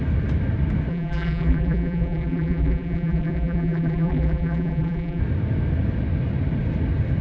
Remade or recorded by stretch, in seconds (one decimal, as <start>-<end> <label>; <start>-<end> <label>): 0.0-0.9 recorded; 0.9-5.2 remade; 5.2-7.2 recorded